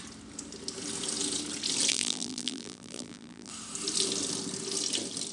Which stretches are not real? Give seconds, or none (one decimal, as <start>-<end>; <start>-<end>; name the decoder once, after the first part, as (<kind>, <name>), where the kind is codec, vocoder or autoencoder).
1.9-3.5 (vocoder, BigVGAN v2)